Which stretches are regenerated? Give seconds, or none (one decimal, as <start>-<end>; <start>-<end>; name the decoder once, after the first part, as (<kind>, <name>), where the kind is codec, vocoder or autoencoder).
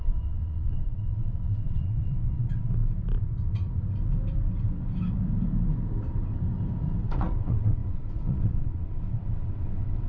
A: 0.0-2.8 (vocoder, WaveNeXt); 7.0-10.1